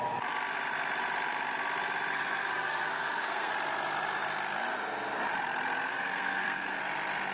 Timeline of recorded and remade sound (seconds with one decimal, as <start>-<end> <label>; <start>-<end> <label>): 0.0-2.1 recorded; 2.1-3.5 remade; 3.5-5.9 recorded; 5.9-6.8 remade; 6.8-7.3 recorded